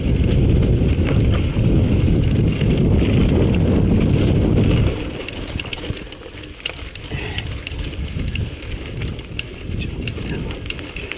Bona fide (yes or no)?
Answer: yes